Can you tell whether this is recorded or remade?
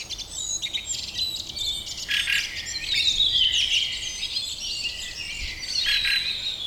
recorded